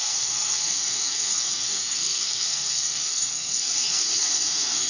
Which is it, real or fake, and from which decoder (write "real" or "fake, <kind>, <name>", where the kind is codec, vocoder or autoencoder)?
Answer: fake, codec, SNAC